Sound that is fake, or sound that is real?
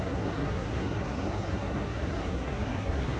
fake